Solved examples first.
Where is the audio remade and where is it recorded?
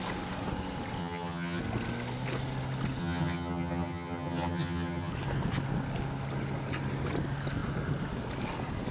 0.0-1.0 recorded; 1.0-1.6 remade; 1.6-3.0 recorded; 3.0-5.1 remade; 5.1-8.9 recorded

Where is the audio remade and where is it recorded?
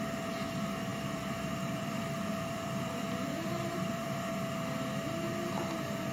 0.0-0.9 recorded; 0.9-4.3 remade; 4.3-6.1 recorded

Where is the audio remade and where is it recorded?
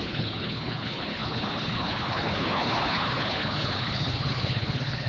0.0-5.1 remade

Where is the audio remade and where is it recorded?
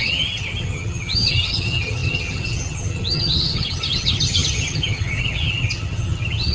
0.0-6.5 remade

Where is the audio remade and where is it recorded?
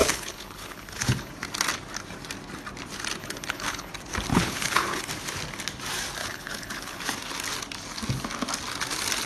0.0-1.3 remade; 1.3-3.2 recorded; 3.2-3.9 remade; 3.9-4.3 recorded; 4.3-5.1 remade; 5.1-6.2 recorded; 6.2-7.0 remade; 7.0-9.3 recorded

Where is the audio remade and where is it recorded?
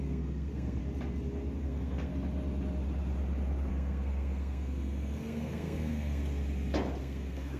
0.0-0.8 remade; 0.8-1.6 recorded; 1.6-2.1 remade; 2.1-3.7 recorded; 3.7-6.2 remade; 6.2-7.0 recorded; 7.0-7.6 remade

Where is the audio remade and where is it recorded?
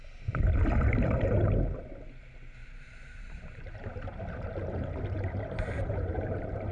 0.0-2.6 recorded; 2.6-6.7 remade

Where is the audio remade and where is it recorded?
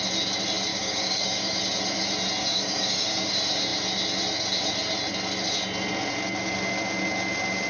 0.0-0.7 recorded; 0.7-1.6 remade; 1.6-2.4 recorded; 2.4-3.3 remade; 3.3-7.7 recorded